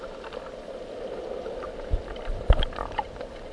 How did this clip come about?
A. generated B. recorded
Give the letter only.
B